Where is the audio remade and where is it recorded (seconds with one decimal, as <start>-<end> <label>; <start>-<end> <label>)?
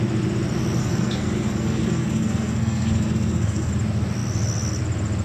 0.0-0.8 recorded; 0.8-3.7 remade; 3.7-5.2 recorded